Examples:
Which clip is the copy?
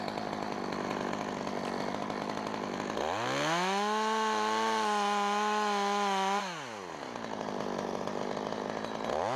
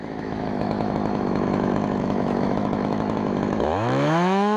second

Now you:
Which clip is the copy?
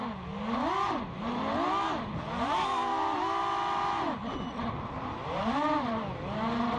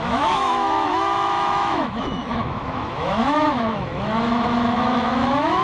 second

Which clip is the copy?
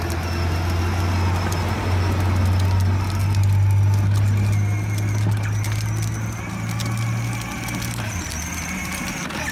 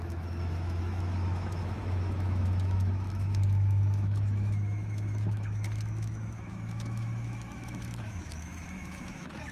second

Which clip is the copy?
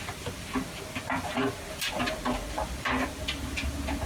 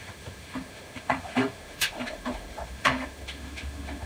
second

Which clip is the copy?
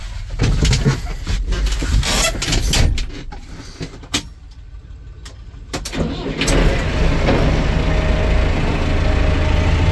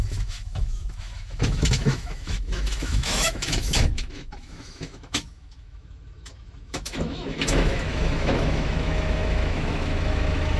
second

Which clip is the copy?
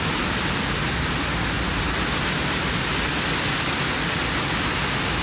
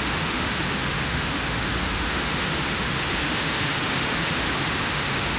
second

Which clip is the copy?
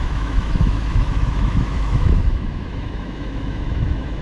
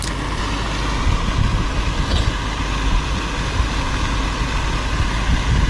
first